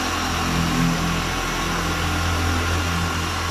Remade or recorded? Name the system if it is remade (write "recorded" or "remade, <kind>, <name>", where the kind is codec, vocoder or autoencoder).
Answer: recorded